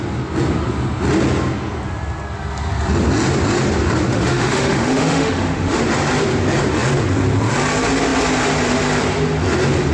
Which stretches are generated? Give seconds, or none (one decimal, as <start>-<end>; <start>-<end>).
4.1-5.8